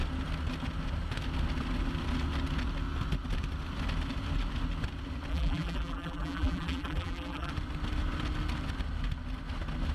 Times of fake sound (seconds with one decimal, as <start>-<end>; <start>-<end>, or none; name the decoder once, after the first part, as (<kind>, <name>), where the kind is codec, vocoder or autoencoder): 5.3-7.5 (vocoder, BigVGAN v2)